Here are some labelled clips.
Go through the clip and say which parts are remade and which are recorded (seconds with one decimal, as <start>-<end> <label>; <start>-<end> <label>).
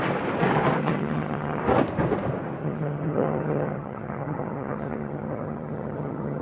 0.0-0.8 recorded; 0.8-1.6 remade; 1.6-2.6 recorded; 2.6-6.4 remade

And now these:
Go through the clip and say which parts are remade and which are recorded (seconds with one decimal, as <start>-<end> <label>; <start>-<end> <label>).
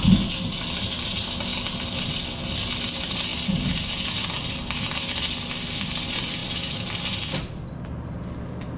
0.0-8.8 recorded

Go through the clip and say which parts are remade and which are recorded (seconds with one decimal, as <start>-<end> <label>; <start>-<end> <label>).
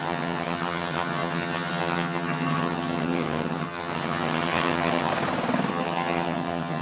0.0-5.1 remade; 5.1-5.7 recorded; 5.7-6.8 remade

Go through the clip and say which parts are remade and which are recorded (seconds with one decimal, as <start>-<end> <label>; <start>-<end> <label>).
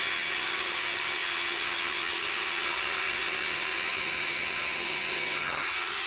0.0-6.1 remade